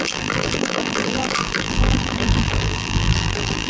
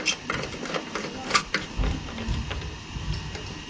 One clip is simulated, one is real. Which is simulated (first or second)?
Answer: first